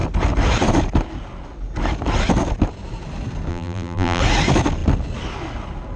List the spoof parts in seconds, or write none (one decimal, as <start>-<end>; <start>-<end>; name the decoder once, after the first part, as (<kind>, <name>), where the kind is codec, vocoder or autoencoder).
3.5-4.2 (vocoder, BigVGAN v2)